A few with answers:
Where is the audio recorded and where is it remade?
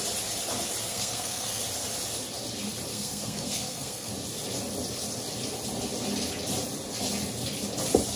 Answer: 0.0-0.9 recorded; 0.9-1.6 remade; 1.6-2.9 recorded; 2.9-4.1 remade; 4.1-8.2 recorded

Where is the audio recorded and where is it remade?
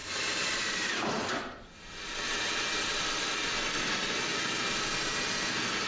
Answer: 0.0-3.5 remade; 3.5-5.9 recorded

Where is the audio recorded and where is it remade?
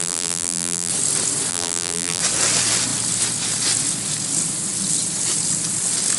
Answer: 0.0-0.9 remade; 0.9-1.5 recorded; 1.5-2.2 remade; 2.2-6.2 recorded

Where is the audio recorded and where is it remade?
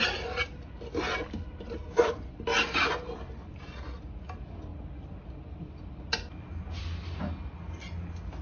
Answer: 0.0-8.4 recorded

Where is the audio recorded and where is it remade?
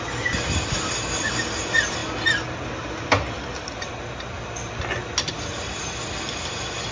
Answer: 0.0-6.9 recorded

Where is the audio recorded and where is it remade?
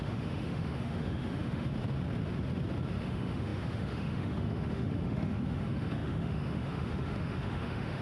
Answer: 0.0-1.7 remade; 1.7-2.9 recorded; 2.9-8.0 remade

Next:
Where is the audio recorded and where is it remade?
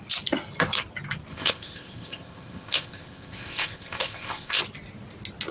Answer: 0.0-1.3 recorded; 1.3-4.6 remade; 4.6-5.5 recorded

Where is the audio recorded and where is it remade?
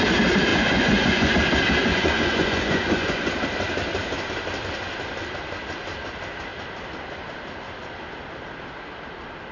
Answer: 0.0-0.5 recorded; 0.5-1.3 remade; 1.3-1.9 recorded; 1.9-3.3 remade; 3.3-9.5 recorded